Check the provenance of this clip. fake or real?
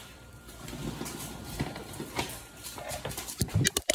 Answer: fake